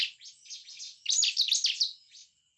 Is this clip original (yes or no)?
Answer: yes